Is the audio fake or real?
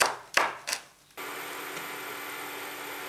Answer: real